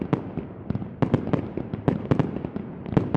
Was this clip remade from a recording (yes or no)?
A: no